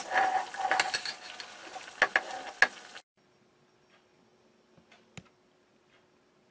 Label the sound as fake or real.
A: real